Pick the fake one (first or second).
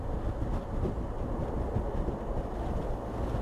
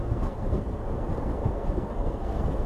second